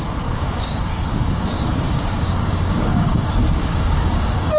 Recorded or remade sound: remade